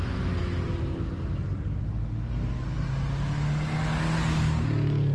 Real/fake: real